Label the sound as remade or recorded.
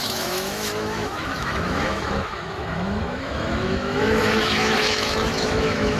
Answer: remade